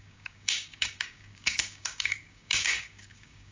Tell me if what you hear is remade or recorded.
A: remade